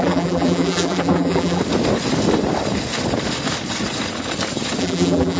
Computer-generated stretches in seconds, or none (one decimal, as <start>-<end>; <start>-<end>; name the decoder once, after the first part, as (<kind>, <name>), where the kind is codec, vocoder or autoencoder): 0.0-1.6 (vocoder, BigVGAN v2); 4.8-5.4